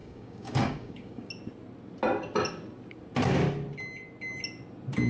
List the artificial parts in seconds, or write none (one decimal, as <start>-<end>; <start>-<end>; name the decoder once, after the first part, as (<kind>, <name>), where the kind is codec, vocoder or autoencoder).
0.0-1.3 (codec, DAC)